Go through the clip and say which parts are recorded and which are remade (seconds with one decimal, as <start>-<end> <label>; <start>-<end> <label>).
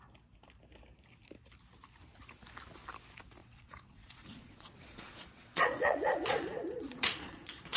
0.0-3.4 recorded; 3.4-7.8 remade